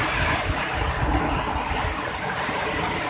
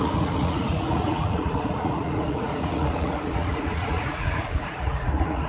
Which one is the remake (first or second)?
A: second